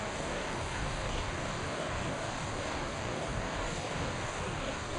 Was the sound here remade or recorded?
remade